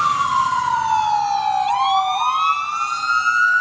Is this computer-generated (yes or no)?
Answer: no